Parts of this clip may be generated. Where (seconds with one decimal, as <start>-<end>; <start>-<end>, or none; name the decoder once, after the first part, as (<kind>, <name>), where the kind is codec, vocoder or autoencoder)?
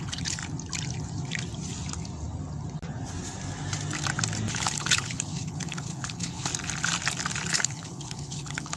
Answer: 0.0-0.4 (codec, HILCodec); 4.5-6.5; 7.5-8.8